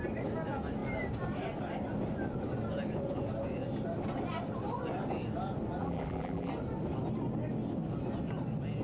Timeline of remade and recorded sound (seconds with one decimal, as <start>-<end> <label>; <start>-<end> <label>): 0.0-5.8 recorded; 5.8-6.5 remade; 6.5-8.8 recorded